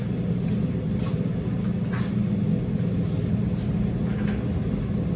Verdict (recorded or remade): recorded